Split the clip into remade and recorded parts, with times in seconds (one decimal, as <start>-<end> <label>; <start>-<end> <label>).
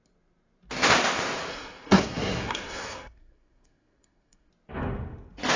0.0-1.5 recorded; 1.5-4.5 remade; 4.5-5.6 recorded